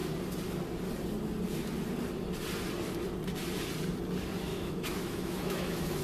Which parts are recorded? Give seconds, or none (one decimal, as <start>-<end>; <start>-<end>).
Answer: 0.0-4.5